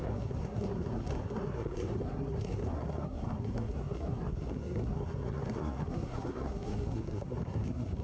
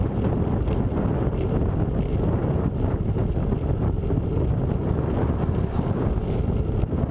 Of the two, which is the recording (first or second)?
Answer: second